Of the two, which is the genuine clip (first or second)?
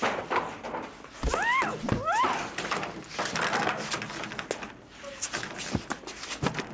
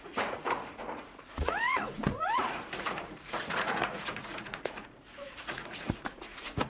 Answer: first